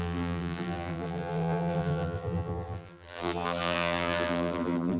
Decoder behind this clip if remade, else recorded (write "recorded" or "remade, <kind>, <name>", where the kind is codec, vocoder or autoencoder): remade, vocoder, BigVGAN v2